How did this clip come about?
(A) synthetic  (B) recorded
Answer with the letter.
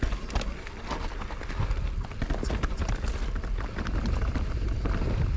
B